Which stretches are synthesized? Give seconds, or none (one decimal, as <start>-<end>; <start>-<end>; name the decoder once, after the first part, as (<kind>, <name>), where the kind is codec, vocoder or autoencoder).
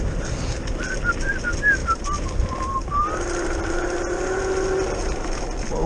none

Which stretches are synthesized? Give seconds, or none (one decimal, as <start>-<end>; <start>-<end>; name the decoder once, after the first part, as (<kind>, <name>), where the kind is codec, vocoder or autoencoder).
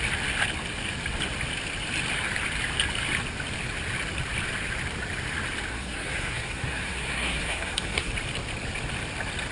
5.7-8.1 (codec, SNAC)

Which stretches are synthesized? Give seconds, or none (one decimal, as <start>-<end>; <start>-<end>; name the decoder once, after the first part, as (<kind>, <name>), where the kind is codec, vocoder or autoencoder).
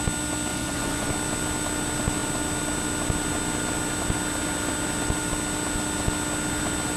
0.5-1.1 (vocoder, Vocos)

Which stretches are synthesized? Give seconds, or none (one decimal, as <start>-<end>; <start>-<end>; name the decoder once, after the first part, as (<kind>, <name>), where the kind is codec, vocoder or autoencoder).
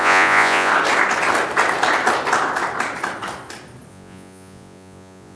0.0-0.7 (vocoder, Vocos); 3.9-5.4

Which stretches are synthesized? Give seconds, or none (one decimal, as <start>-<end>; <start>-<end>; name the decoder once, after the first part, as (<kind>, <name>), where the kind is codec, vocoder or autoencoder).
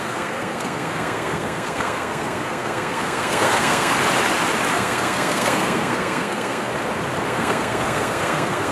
0.0-4.0 (codec, SNAC); 4.7-6.7; 7.3-8.7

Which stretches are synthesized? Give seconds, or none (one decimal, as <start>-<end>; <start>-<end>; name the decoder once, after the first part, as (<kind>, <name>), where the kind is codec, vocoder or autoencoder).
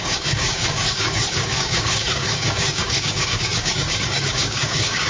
0.0-5.1 (codec, DAC)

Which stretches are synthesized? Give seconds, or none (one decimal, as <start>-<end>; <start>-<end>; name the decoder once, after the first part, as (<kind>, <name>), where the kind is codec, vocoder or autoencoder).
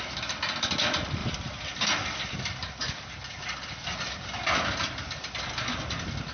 1.2-4.5 (vocoder, BigVGAN v2)